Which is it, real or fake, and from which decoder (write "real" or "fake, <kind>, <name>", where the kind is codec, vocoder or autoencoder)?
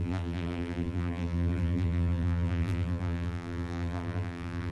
fake, vocoder, BigVGAN v2